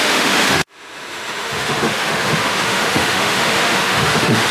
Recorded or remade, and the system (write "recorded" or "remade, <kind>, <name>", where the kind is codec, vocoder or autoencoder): remade, autoencoder, DAC-VAE